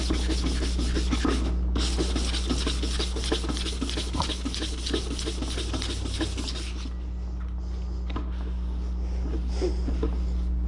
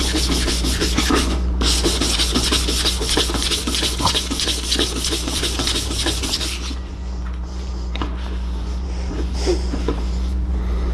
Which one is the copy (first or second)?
second